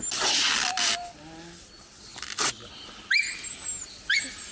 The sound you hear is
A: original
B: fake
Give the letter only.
A